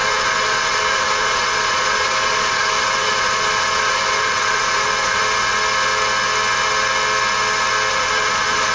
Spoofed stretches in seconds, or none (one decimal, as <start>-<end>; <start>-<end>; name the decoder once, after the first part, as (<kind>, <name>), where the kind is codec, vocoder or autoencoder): 0.0-5.2 (vocoder, Vocos); 7.9-8.7